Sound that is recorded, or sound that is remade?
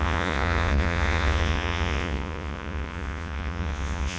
remade